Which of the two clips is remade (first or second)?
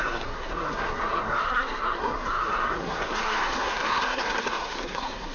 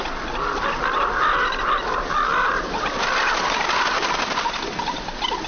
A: first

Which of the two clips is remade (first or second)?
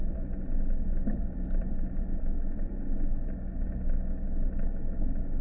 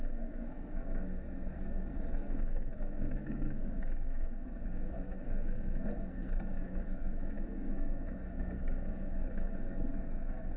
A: second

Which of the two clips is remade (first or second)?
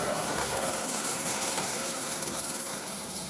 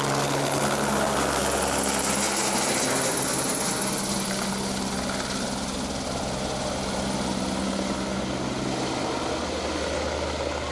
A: first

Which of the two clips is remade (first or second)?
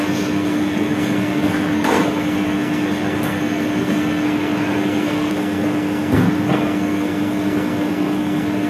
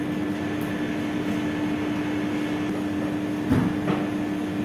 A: first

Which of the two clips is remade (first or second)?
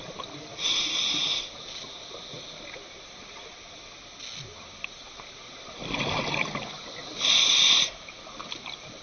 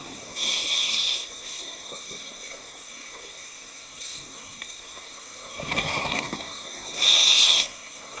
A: second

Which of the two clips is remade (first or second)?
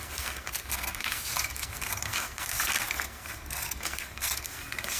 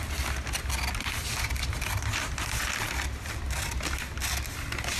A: first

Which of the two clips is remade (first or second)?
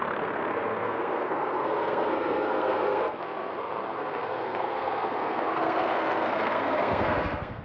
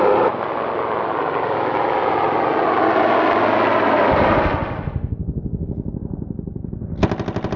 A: first